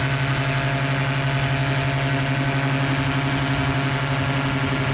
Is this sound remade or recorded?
recorded